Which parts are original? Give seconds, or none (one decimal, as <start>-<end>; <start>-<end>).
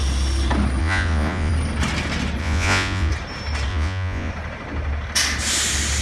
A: 0.0-0.8; 1.5-2.4; 3.1-3.7; 4.3-6.0